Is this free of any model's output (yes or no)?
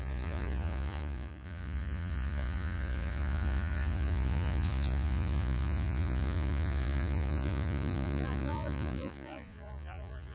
no